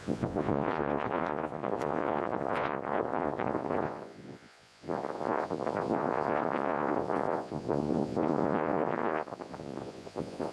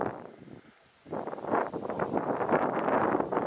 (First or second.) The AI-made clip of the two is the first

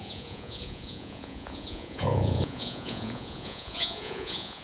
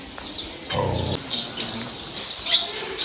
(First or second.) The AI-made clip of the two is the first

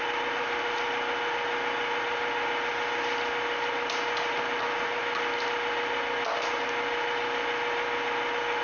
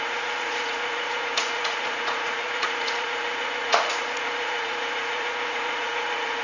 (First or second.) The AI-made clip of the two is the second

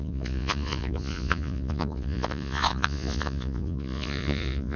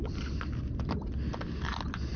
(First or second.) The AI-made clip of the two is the first